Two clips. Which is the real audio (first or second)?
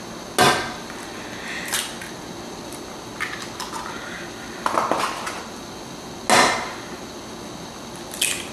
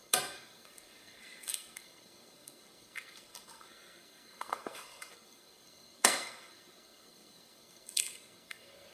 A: first